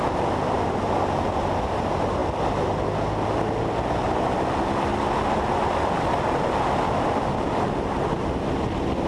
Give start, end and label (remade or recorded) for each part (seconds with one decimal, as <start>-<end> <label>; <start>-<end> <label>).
0.0-9.1 recorded